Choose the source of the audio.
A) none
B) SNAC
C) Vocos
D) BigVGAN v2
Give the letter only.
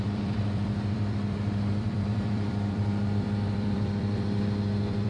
D